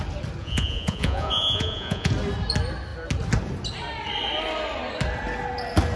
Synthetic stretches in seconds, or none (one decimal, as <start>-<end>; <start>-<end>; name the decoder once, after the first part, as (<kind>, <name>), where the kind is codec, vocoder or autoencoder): 0.4-2.1 (vocoder, Vocos)